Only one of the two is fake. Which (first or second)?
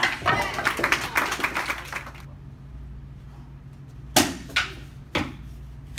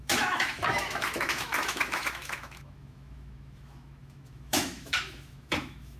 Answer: second